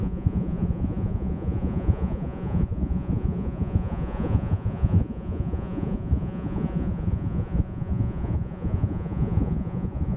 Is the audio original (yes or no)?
no